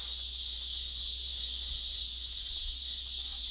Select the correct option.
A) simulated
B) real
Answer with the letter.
A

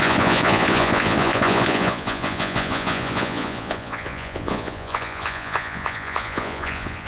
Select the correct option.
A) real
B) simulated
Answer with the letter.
B